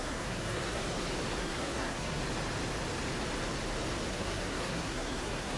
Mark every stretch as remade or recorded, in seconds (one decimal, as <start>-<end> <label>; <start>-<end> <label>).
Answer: 0.0-0.8 remade; 0.8-1.4 recorded; 1.4-2.2 remade; 2.2-4.1 recorded; 4.1-5.6 remade